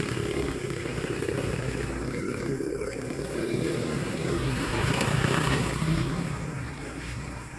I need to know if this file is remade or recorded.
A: remade